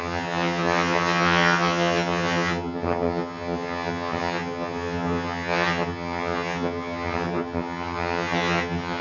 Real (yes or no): no